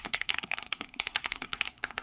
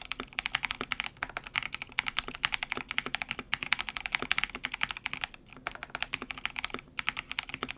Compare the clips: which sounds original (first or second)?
second